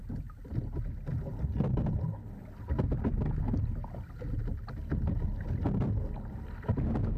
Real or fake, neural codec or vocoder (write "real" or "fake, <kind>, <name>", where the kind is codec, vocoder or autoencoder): real